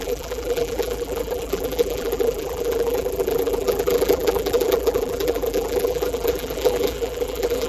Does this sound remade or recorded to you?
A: remade